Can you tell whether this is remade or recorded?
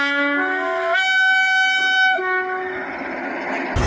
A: recorded